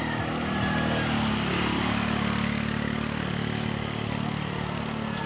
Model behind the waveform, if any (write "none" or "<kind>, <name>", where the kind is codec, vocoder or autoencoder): none